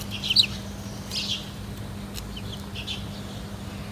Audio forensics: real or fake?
real